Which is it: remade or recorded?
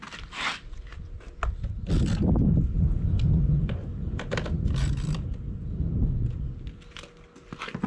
recorded